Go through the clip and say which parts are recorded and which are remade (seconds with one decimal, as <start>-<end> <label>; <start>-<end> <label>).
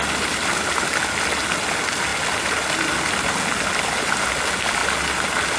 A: 0.0-5.6 recorded